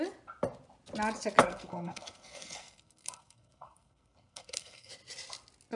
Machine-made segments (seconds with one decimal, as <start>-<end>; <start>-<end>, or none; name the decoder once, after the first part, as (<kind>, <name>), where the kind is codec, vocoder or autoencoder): 1.4-4.9 (codec, SNAC)

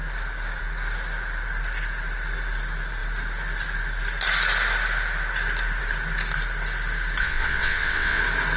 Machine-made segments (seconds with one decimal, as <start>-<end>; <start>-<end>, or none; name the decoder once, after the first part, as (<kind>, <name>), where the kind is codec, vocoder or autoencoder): 7.2-8.2 (vocoder, WaveNeXt)